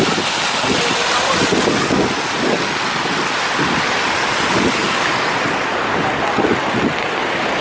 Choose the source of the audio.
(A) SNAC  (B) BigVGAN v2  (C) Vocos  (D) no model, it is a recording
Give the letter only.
D